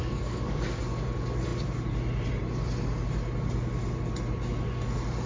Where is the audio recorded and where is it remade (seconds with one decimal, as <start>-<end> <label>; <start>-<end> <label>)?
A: 0.0-0.8 remade; 0.8-5.3 recorded